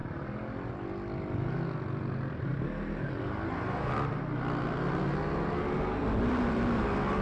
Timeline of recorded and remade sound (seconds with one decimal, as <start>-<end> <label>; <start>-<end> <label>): 0.0-0.7 recorded; 0.7-2.5 remade; 2.5-6.0 recorded; 6.0-7.2 remade